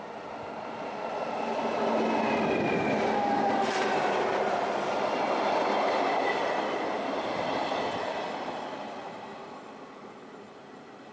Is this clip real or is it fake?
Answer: real